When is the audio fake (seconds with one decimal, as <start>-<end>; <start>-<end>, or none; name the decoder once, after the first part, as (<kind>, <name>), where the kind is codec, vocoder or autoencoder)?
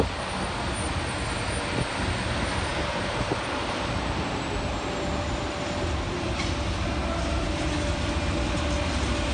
none